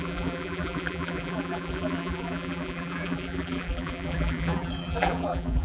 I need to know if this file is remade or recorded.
remade